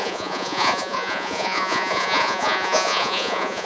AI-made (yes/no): yes